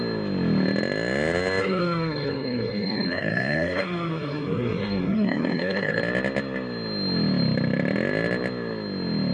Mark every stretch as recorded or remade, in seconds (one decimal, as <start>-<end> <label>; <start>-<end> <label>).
0.0-1.6 recorded; 1.6-6.0 remade; 6.0-9.3 recorded